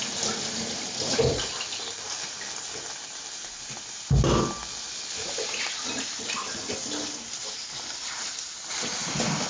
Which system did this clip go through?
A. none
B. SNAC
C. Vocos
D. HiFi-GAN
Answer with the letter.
A